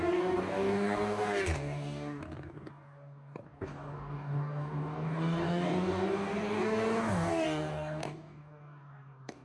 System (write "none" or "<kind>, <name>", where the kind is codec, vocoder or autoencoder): codec, DAC